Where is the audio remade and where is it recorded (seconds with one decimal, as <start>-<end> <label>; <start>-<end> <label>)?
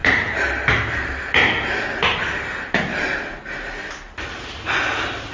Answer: 0.0-5.3 recorded